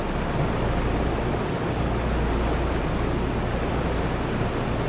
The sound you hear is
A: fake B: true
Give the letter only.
B